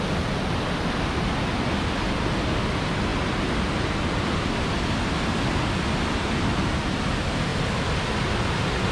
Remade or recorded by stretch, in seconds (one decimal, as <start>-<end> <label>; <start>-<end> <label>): 0.0-8.9 recorded